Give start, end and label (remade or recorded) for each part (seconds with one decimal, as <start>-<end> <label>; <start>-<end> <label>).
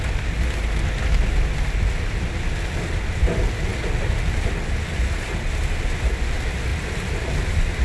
0.0-7.8 recorded